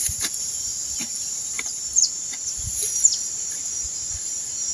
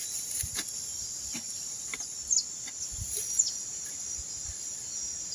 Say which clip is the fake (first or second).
first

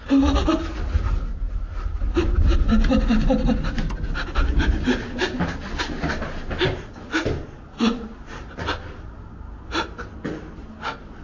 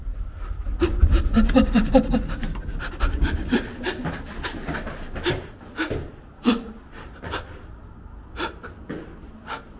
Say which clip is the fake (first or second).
second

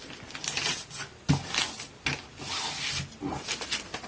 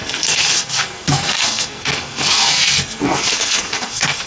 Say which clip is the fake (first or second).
second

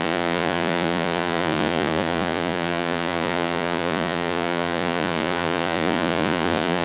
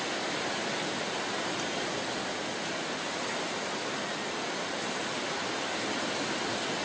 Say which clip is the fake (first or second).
first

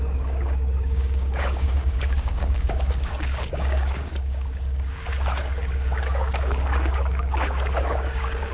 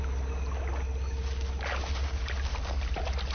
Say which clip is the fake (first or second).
first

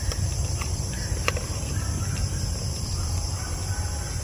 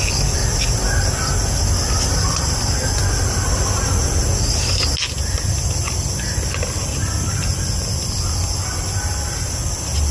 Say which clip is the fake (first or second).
first